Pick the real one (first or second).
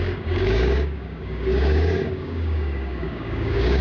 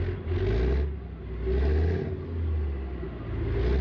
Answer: second